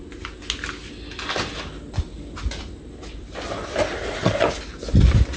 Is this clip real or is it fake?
real